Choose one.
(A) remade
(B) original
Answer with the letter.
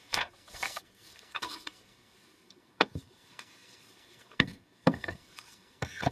A